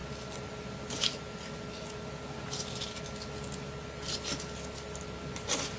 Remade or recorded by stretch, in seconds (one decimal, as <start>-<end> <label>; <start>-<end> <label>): 0.0-5.8 recorded